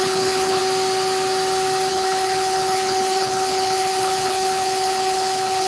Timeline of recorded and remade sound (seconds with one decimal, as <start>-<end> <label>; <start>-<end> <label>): 0.0-0.6 remade; 0.6-1.9 recorded; 1.9-5.7 remade